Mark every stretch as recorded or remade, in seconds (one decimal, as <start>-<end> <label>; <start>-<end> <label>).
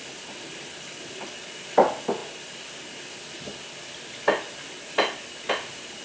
0.0-6.0 recorded